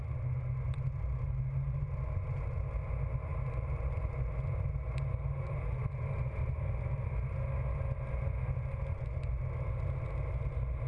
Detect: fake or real real